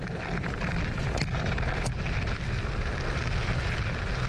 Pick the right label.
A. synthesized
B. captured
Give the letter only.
B